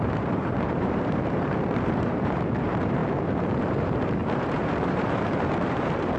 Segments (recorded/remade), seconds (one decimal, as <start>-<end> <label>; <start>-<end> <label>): 0.0-6.2 remade

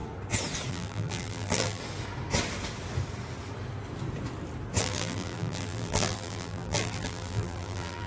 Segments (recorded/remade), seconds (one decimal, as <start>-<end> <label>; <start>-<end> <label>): 0.0-0.7 recorded; 0.7-1.8 remade; 1.8-4.8 recorded; 4.8-8.1 remade

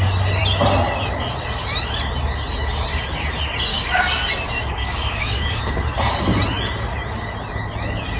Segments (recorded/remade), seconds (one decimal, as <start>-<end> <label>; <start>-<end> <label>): 0.0-3.7 recorded; 3.7-5.6 remade; 5.6-8.2 recorded

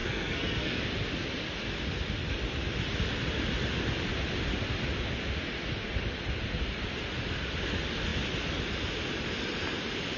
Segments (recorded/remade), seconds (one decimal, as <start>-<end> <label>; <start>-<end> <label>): 0.0-0.8 remade; 0.8-10.2 recorded

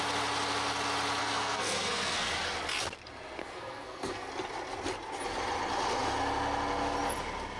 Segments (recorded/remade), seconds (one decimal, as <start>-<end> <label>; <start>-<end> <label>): 0.0-1.2 recorded; 1.2-2.3 remade; 2.3-3.4 recorded; 3.4-4.3 remade; 4.3-7.6 recorded

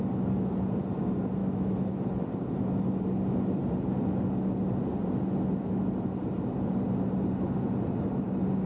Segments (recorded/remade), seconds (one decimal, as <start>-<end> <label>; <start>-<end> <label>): 0.0-1.4 recorded; 1.4-2.0 remade; 2.0-8.7 recorded